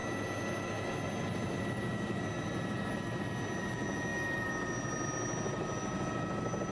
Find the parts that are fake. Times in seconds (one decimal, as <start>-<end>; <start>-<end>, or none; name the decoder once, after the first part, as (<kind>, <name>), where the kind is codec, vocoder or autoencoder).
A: none